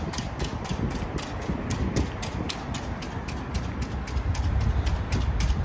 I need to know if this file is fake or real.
real